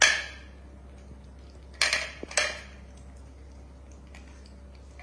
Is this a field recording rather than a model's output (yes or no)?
yes